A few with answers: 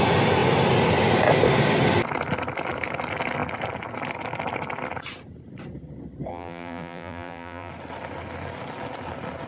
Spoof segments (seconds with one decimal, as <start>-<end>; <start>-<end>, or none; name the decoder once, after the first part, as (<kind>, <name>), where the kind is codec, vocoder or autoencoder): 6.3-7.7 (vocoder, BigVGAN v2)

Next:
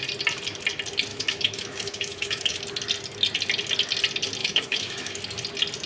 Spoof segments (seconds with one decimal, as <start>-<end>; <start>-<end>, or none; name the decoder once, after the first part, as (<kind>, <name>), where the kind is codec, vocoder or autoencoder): 1.1-2.6 (autoencoder, DAC-VAE); 4.4-5.2

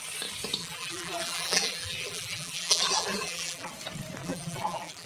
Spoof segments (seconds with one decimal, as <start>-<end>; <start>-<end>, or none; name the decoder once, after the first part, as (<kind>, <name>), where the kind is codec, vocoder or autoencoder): 0.6-3.7 (vocoder, BigVGAN v2); 4.2-5.1

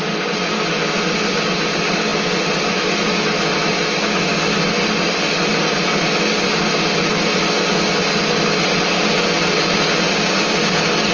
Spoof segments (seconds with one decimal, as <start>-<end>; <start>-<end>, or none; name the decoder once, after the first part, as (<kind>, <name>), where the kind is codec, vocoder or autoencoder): none

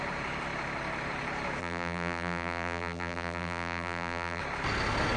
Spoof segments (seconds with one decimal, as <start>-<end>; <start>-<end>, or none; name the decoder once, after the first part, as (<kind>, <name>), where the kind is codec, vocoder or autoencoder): 1.6-4.4 (vocoder, BigVGAN v2)

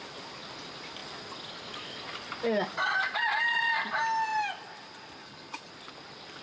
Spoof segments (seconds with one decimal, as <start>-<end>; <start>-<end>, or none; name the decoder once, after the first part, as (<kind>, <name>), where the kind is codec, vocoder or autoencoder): 5.2-5.7 (codec, HILCodec)

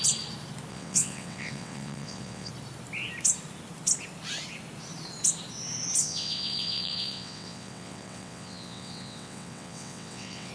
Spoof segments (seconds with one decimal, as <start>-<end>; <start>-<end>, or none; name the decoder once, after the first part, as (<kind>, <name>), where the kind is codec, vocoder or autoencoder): 0.7-2.5 (vocoder, WaveNeXt); 6.0-10.5